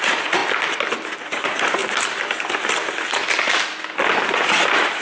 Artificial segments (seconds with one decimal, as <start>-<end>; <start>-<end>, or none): 0.0-0.4; 1.2-1.8